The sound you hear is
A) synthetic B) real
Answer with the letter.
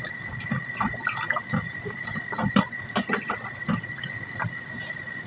B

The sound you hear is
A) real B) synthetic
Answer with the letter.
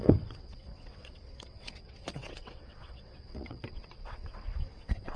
B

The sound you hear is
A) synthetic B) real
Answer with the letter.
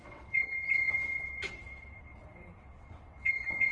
A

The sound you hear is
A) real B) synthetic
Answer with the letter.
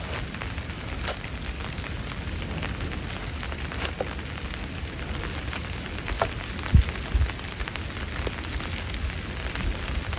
A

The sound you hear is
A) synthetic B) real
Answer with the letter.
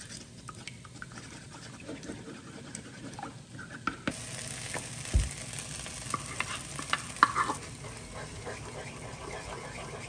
B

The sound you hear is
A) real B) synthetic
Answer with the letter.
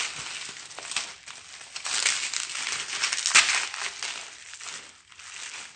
A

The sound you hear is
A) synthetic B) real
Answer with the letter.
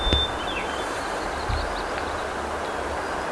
B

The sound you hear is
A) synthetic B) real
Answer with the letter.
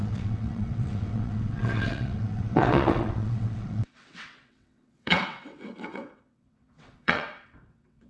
A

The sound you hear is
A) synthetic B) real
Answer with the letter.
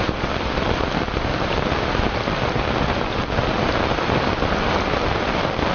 B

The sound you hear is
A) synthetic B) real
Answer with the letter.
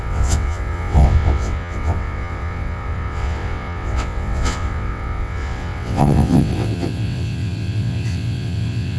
A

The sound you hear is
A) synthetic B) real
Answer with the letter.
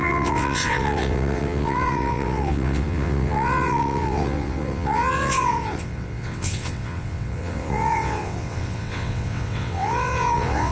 A